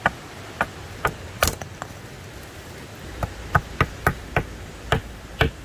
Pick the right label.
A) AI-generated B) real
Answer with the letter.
B